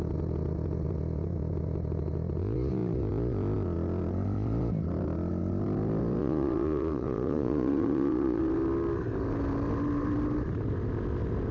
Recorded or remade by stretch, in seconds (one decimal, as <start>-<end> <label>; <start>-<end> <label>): 0.0-6.2 recorded; 6.2-8.4 remade; 8.4-11.5 recorded